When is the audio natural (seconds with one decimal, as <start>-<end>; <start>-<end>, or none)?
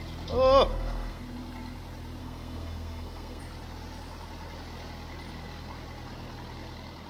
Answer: 0.0-0.7; 1.2-2.2; 3.4-7.1